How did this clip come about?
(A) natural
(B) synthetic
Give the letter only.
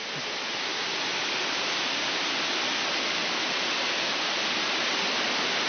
A